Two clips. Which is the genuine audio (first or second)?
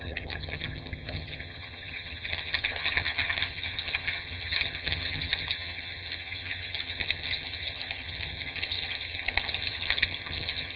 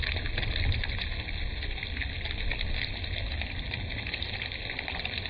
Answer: second